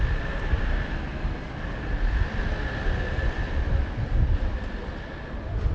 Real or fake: real